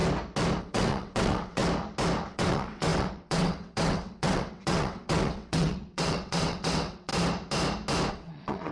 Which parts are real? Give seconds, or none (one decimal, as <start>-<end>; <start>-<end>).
0.0-0.6; 1.6-2.3; 7.1-8.1